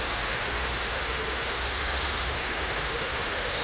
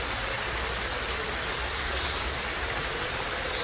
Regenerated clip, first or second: first